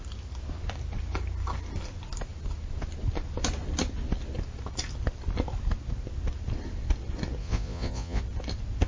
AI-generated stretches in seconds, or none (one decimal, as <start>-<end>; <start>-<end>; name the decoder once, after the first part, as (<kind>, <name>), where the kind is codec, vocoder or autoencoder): 7.4-8.2 (vocoder, Vocos)